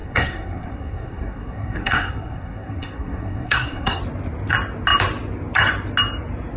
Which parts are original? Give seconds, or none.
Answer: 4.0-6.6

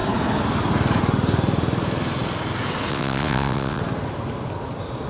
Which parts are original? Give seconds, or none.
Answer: 0.0-2.9; 3.8-5.1

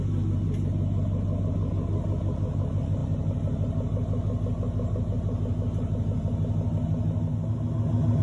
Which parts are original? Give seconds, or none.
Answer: 0.0-8.2

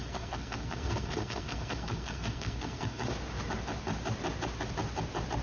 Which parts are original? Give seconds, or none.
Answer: 3.0-5.4